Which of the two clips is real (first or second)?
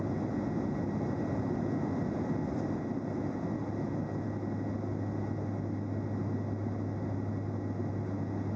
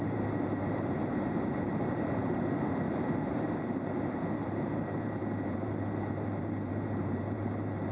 first